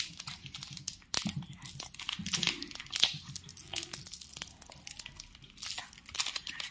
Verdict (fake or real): real